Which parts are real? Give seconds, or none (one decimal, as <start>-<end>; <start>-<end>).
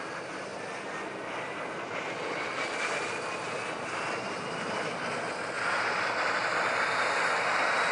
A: 0.0-7.9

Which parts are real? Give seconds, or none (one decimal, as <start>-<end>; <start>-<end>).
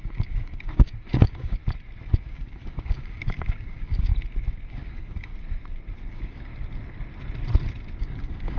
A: 1.6-2.3; 4.1-4.7; 5.3-6.1; 6.5-8.0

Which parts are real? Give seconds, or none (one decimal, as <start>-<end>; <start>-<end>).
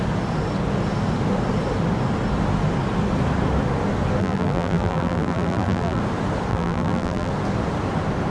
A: 0.0-4.2; 6.0-6.5; 7.3-8.3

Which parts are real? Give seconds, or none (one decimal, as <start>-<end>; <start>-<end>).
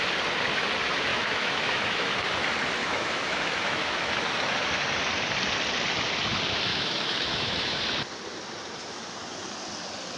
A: 0.0-1.1; 2.3-2.8; 4.1-6.7; 7.8-10.2